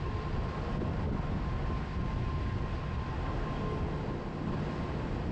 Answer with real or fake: real